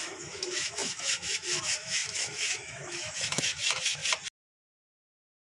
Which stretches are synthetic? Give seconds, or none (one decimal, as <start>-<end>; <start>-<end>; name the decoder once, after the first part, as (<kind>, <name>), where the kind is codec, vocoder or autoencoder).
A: 0.0-4.0 (autoencoder, DAC-VAE); 4.9-5.5

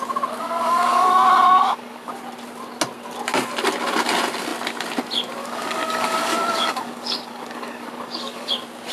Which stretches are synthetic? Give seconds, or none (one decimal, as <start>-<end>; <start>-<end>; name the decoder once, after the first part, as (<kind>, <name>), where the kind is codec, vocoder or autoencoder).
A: 0.4-2.1 (codec, DAC); 5.4-8.5